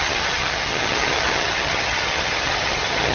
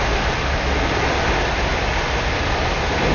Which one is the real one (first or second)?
second